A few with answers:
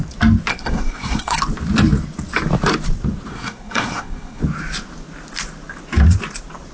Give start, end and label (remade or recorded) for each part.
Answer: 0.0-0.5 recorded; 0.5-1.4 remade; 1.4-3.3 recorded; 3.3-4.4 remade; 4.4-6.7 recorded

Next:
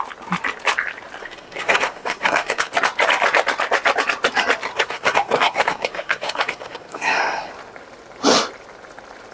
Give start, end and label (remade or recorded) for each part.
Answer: 0.0-1.2 recorded; 1.2-2.7 remade; 2.7-4.7 recorded; 4.7-7.5 remade; 7.5-9.3 recorded